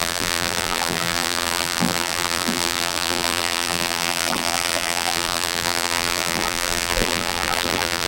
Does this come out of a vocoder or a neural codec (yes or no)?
yes